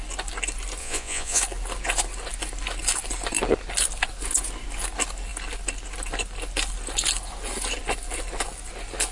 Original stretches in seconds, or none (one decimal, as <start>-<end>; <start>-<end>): 0.0-0.8; 1.4-9.1